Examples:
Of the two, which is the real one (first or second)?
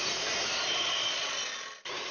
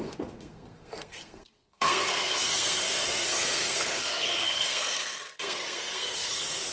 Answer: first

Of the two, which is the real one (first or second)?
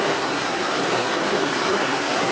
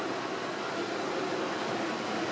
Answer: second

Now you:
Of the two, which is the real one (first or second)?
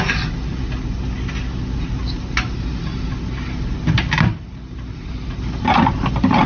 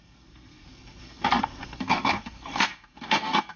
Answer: first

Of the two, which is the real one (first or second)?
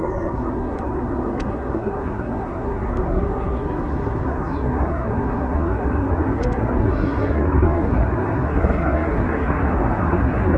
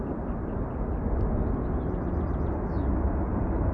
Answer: second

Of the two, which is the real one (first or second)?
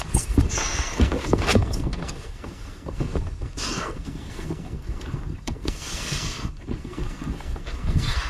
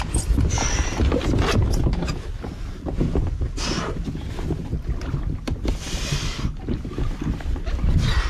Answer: second